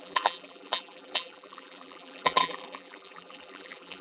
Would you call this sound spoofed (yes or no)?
yes